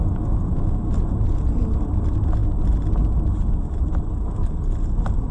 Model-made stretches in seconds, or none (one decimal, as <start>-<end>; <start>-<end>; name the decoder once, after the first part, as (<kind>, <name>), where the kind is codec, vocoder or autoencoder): none